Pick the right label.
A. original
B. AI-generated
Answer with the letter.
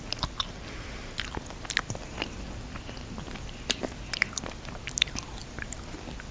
A